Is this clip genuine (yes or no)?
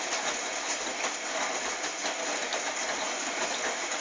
yes